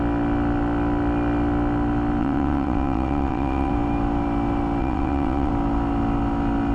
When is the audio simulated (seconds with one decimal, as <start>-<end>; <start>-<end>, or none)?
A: 2.2-3.7; 4.8-5.5